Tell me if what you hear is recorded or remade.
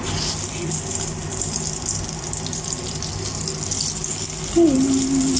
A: recorded